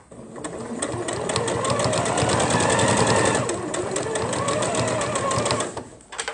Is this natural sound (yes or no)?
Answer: yes